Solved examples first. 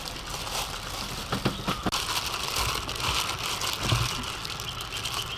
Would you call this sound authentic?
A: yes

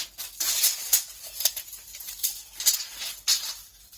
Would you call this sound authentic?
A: yes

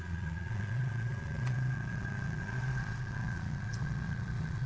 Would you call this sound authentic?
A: no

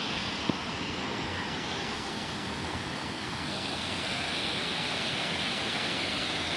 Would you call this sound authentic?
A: no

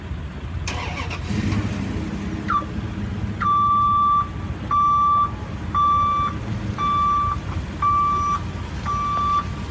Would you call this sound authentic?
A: yes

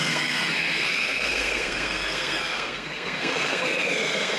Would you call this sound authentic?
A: no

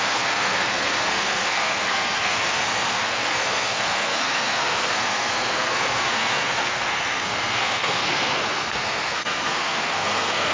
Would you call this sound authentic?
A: no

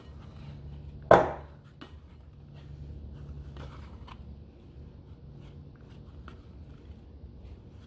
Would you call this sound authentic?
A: yes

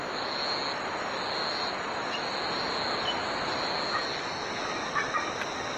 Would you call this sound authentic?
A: yes